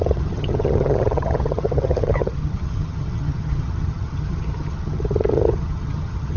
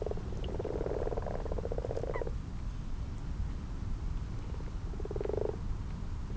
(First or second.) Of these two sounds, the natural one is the second